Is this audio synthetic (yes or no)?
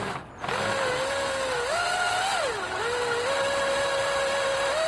no